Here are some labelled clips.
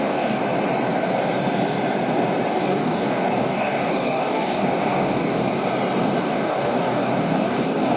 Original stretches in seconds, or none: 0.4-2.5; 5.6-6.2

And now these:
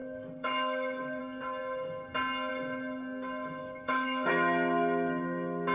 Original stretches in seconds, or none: 1.2-3.6; 4.3-5.7

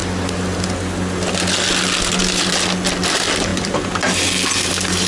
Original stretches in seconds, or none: 0.0-3.5; 4.0-5.1

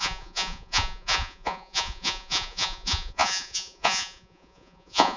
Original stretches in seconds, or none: none

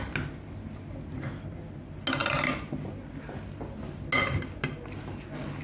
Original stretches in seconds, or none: 0.0-5.6

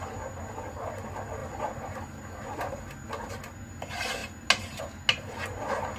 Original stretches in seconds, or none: 0.0-6.0

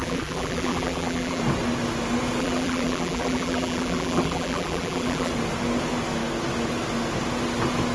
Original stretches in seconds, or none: 1.4-2.4; 5.3-7.9